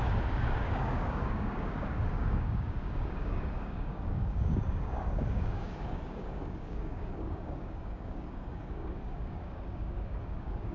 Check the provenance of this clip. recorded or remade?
remade